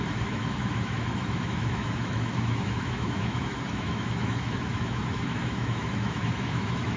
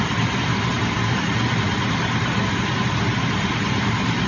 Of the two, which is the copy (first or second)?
first